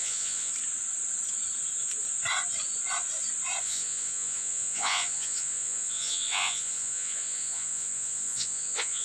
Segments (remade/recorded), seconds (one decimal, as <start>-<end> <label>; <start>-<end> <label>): 0.0-0.5 remade; 0.5-3.6 recorded; 3.6-9.0 remade